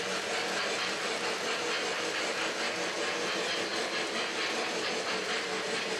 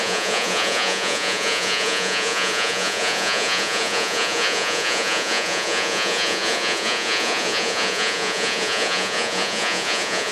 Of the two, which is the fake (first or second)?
second